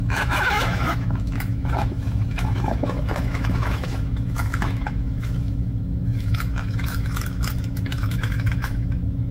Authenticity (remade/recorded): remade